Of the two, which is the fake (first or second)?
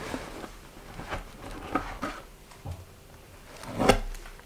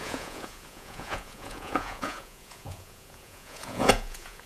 second